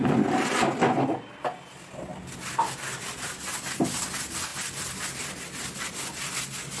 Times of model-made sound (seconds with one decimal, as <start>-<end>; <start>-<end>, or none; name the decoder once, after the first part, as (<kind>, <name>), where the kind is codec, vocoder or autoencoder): none